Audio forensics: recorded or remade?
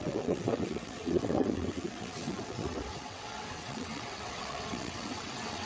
remade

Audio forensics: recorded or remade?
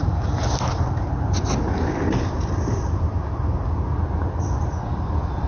recorded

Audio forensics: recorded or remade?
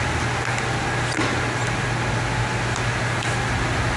recorded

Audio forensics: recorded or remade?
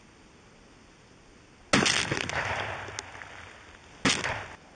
recorded